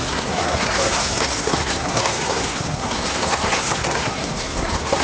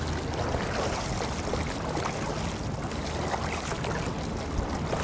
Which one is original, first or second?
second